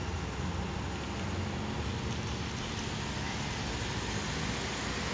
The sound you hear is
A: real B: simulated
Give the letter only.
A